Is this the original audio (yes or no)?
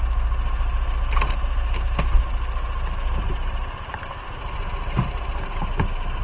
yes